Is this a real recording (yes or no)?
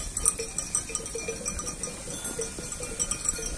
yes